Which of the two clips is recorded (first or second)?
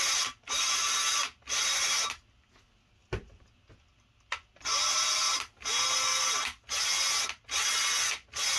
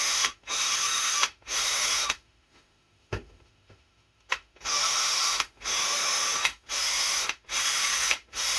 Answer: first